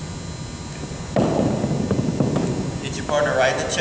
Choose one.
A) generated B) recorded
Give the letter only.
B